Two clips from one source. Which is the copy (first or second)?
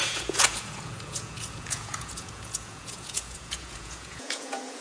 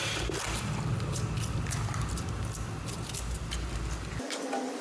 first